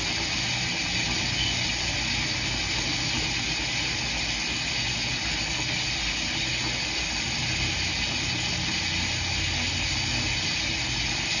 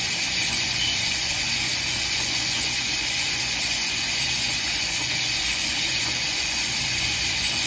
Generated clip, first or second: second